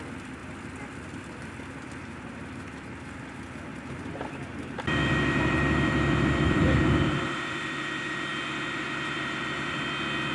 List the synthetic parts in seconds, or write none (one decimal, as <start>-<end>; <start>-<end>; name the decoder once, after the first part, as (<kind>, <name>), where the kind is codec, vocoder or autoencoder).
3.7-7.8 (vocoder, BigVGAN v2)